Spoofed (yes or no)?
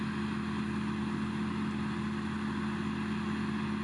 no